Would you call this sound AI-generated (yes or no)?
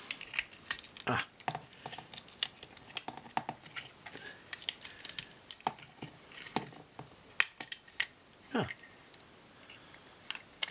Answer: no